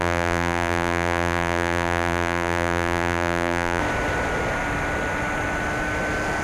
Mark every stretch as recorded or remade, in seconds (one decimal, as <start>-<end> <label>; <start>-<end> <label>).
0.0-3.8 remade; 3.8-6.4 recorded